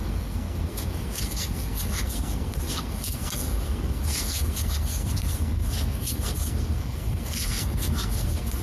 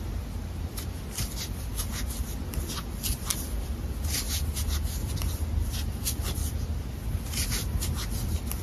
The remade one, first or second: first